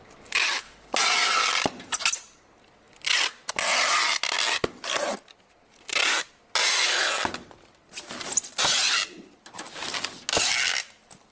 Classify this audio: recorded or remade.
recorded